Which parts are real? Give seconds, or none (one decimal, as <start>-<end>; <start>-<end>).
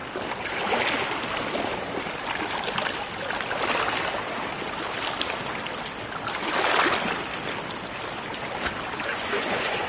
0.0-9.1